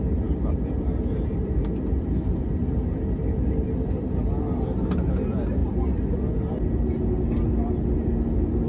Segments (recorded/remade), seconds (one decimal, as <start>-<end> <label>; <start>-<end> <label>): 0.0-8.7 recorded